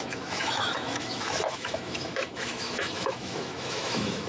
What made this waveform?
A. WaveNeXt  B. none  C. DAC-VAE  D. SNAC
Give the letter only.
C